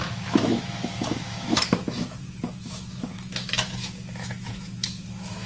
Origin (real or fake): fake